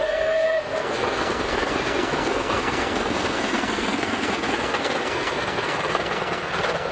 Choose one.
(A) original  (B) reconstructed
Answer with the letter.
B